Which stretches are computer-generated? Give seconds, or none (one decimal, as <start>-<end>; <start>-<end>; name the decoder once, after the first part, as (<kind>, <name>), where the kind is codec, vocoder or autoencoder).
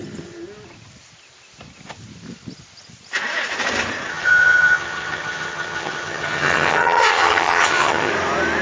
4.1-8.1 (vocoder, HiFi-GAN)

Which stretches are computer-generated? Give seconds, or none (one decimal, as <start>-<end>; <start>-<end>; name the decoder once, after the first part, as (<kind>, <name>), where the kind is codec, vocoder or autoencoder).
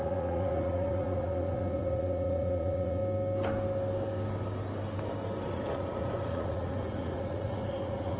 0.0-3.0 (vocoder, Vocos); 5.5-8.2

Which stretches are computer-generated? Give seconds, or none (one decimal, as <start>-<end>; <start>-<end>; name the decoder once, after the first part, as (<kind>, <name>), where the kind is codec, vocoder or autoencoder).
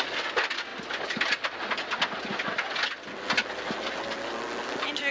none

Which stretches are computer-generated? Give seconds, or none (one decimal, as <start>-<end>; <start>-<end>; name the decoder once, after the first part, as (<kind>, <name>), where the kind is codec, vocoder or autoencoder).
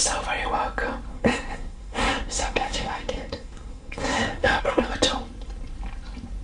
1.1-4.9 (codec, SNAC)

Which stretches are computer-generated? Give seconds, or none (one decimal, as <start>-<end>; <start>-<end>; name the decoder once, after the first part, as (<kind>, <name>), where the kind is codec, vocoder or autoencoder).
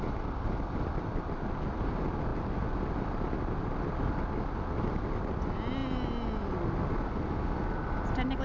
none